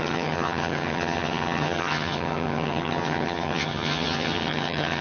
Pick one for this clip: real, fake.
fake